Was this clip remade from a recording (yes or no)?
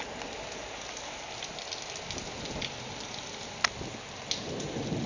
no